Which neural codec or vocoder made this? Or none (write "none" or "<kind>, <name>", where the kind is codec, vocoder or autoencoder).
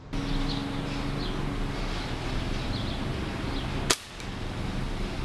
none